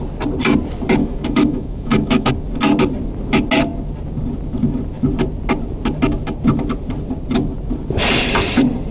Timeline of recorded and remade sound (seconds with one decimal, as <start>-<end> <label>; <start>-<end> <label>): 0.0-1.0 recorded; 1.0-2.3 remade; 2.3-8.9 recorded